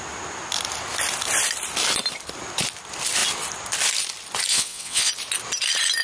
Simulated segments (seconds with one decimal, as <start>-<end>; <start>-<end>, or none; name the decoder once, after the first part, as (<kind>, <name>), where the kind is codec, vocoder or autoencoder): 4.5-5.1 (vocoder, WaveNeXt)

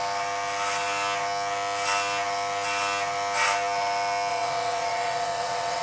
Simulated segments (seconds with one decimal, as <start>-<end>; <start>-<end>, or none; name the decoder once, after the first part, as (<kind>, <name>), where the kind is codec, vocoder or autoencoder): 4.3-5.8 (vocoder, WaveNeXt)

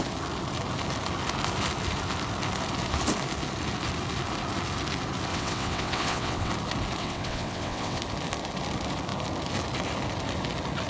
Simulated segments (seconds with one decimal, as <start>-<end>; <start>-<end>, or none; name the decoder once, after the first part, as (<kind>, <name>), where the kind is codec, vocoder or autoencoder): 5.3-6.5 (vocoder, WaveNeXt); 7.0-8.0

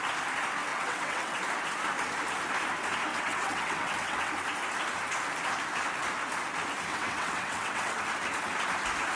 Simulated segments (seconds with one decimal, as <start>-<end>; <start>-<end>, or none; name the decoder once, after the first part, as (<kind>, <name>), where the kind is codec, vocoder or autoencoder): 0.7-1.4 (vocoder, WaveNeXt); 3.1-4.3; 6.9-8.0

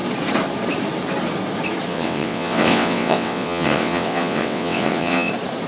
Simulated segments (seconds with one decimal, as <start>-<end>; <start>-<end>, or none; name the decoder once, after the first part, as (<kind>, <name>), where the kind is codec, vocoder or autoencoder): 1.9-5.3 (vocoder, WaveNeXt)

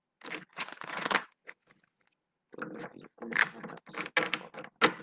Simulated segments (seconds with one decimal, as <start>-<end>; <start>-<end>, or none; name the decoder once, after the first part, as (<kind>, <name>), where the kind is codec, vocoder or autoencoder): 0.5-1.6 (vocoder, WaveNeXt)